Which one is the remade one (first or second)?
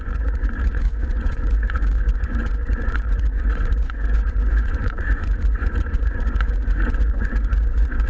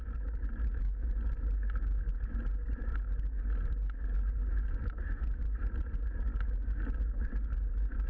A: first